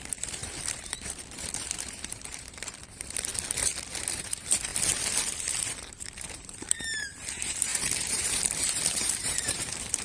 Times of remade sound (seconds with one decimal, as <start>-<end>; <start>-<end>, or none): 0.0-3.3; 4.0-4.7; 5.7-10.0